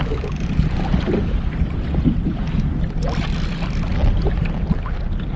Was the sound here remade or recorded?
recorded